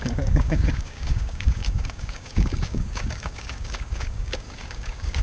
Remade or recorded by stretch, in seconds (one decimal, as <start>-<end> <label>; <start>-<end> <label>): 0.0-5.2 remade